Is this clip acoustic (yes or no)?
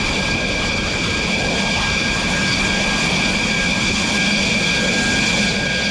yes